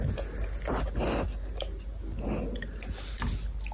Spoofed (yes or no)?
no